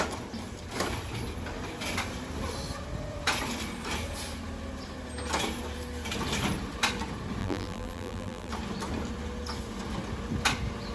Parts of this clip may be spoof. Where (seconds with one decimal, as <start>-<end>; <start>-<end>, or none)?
7.4-8.5